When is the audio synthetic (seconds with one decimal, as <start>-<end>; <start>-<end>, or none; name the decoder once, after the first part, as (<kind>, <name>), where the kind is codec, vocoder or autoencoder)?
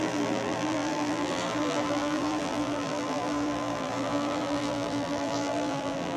0.0-6.2 (vocoder, BigVGAN v2)